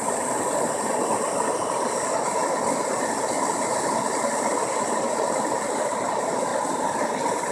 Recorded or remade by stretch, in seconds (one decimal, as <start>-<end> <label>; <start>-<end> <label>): 0.0-6.5 recorded; 6.5-7.5 remade